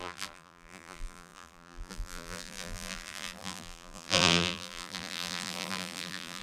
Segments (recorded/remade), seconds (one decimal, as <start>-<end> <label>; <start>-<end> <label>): 0.0-6.4 remade